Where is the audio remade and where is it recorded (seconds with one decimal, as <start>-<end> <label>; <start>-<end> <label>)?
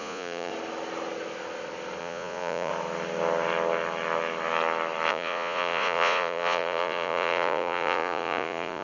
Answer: 0.0-0.5 remade; 0.5-2.0 recorded; 2.0-2.7 remade; 2.7-5.1 recorded; 5.1-8.8 remade